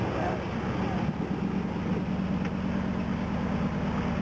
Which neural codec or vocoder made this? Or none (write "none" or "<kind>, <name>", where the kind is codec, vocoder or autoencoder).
none